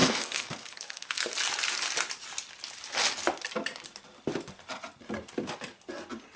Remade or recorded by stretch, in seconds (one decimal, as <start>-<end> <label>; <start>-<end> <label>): 0.0-1.2 remade; 1.2-6.4 recorded